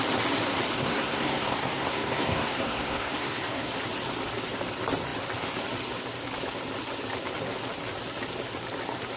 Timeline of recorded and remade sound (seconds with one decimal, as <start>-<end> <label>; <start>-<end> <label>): 0.0-0.8 recorded; 0.8-3.7 remade; 3.7-9.2 recorded